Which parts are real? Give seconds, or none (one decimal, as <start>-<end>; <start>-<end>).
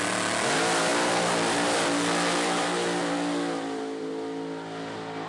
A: 0.0-5.3